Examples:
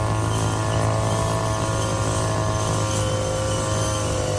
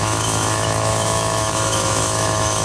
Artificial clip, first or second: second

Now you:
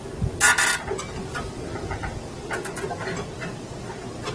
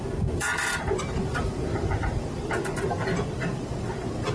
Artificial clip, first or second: second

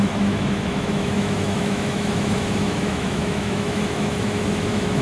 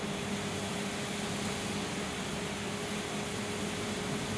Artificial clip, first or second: first